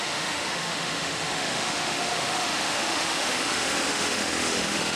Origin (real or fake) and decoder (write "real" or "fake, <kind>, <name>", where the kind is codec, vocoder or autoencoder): fake, autoencoder, DAC-VAE